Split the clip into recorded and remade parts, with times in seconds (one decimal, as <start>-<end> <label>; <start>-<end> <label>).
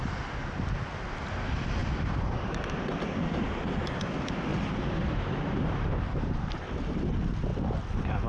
0.0-1.8 recorded; 1.8-2.6 remade; 2.6-4.5 recorded; 4.5-6.7 remade; 6.7-8.3 recorded